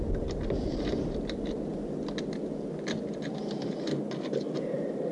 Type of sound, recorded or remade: recorded